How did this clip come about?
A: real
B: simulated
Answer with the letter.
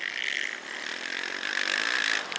A